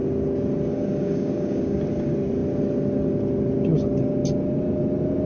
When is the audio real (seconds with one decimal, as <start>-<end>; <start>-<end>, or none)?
0.0-0.7; 1.8-5.3